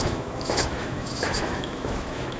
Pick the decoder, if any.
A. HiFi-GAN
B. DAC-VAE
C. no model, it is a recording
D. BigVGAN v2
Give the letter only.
B